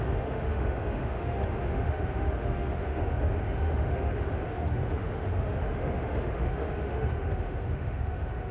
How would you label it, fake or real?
fake